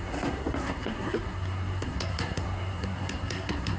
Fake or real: fake